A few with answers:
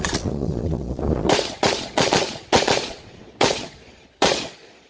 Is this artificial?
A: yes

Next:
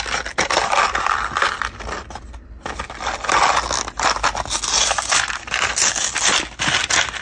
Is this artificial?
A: no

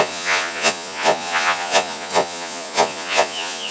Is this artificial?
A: yes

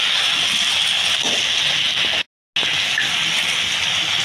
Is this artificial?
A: no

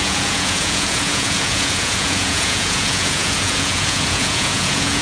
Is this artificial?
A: yes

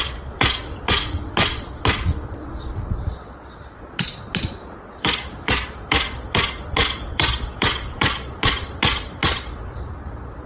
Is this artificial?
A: yes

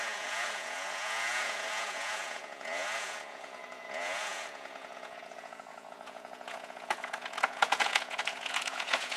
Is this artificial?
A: yes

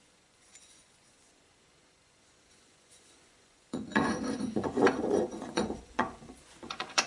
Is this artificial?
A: yes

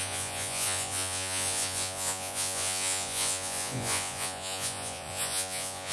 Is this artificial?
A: yes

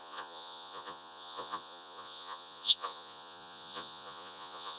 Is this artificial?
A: yes